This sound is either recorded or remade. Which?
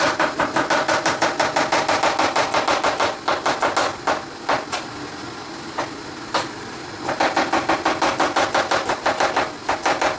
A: recorded